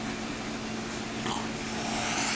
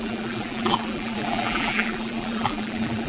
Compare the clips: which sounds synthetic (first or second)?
second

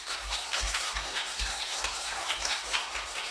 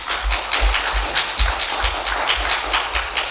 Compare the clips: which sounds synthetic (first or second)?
first